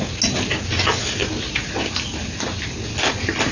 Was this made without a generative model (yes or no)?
yes